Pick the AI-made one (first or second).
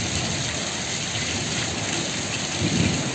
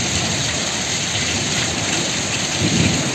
second